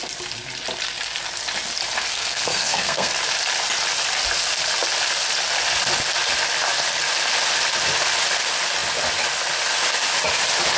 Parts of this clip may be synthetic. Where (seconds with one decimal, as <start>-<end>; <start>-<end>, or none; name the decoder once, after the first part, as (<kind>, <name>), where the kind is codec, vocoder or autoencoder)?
2.1-3.1 (codec, SNAC)